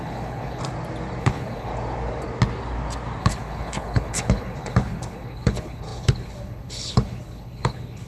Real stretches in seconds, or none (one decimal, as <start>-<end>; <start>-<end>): 0.6-1.2; 1.7-3.2